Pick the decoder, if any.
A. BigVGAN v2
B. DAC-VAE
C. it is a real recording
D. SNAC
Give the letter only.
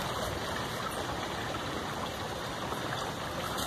C